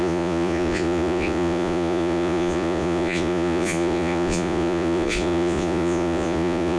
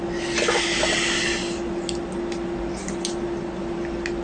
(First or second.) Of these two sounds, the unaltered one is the second